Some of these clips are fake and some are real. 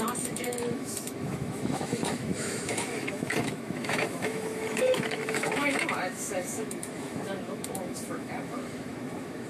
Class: fake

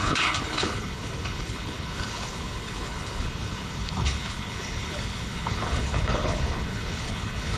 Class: fake